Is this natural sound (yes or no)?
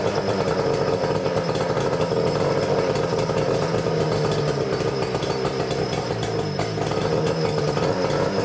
yes